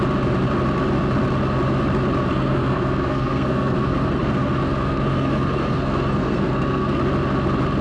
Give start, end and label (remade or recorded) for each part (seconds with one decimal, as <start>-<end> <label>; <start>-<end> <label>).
0.0-2.3 recorded; 2.3-7.0 remade; 7.0-7.8 recorded